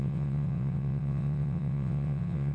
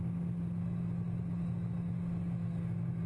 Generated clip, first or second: first